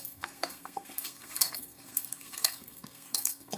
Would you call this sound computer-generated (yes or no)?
yes